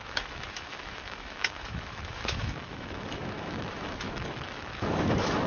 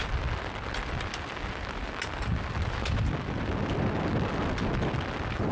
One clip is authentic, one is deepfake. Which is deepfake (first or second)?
first